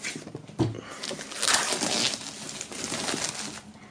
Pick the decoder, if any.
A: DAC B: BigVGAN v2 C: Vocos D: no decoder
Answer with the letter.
D